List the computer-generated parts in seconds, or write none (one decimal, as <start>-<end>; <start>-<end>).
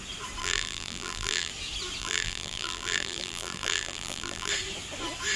0.4-1.5; 2.0-4.5